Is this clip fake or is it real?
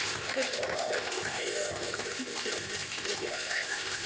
fake